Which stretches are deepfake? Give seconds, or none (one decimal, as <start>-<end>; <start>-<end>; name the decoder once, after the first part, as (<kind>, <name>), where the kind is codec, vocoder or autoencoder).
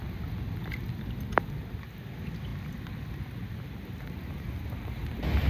none